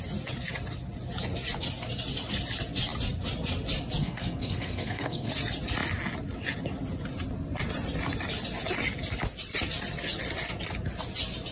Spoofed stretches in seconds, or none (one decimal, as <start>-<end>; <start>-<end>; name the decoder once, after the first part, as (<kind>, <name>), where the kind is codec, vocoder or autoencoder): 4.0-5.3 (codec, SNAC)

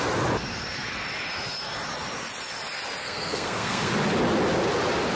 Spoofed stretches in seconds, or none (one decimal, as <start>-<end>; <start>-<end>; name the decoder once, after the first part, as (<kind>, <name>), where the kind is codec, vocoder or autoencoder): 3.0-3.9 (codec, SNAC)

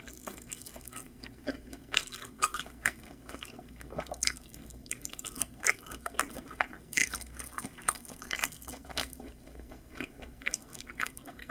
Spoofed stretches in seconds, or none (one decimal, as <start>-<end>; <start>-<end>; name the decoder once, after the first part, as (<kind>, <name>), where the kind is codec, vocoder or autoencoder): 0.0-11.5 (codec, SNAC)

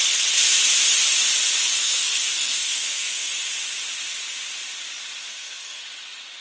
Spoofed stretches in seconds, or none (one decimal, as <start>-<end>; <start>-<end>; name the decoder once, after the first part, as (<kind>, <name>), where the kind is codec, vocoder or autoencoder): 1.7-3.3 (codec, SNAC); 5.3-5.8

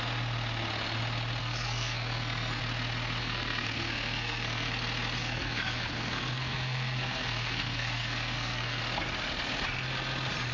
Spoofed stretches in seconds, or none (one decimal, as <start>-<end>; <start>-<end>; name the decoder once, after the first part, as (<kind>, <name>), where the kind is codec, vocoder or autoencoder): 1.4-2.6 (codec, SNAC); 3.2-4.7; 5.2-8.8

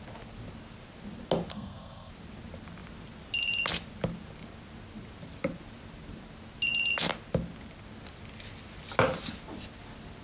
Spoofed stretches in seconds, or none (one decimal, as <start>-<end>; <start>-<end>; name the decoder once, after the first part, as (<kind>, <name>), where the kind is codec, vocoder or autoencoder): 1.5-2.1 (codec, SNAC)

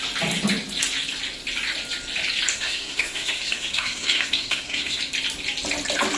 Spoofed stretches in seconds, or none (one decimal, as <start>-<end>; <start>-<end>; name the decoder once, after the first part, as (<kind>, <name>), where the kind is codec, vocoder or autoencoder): 2.5-5.0 (codec, SNAC)

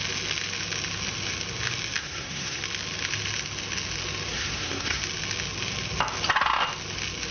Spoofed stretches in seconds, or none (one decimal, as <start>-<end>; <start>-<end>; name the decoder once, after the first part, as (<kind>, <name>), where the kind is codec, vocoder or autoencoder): 2.0-2.6 (codec, SNAC); 4.3-5.0